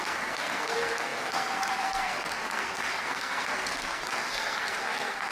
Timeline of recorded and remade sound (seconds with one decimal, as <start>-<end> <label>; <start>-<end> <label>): 0.0-5.3 remade